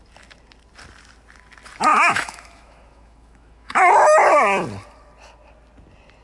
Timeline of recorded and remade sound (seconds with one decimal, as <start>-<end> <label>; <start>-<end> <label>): 0.0-1.9 recorded; 1.9-3.9 remade; 3.9-6.2 recorded